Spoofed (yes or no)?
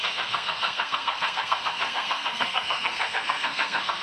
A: yes